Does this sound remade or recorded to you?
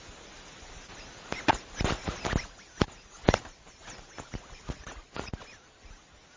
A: recorded